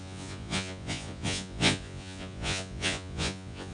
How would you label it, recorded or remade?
remade